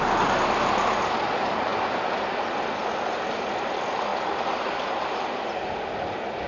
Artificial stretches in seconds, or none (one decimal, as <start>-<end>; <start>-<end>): none